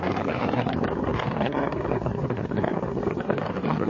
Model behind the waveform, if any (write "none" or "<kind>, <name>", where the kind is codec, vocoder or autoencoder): codec, SNAC